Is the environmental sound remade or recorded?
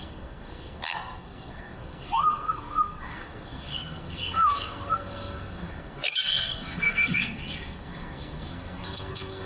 remade